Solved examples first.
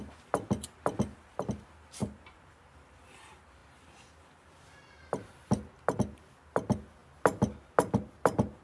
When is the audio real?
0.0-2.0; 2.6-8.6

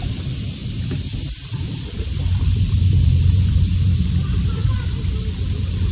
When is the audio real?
0.0-0.6; 4.1-5.9